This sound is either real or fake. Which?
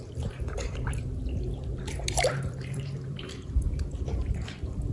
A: fake